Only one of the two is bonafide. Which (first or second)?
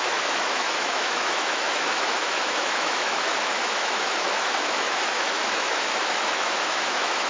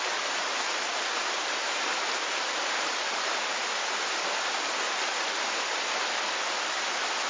second